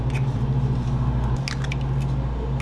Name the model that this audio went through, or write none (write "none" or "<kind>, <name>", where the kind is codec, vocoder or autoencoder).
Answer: none